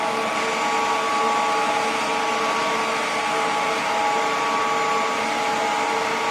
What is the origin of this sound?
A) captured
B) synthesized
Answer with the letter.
A